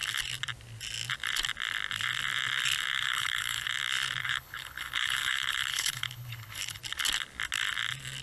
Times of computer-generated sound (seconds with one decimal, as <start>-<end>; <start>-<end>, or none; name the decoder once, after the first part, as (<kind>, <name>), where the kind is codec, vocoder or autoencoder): 2.9-3.7 (codec, HILCodec); 4.2-6.8